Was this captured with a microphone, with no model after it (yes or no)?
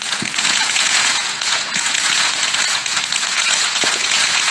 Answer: no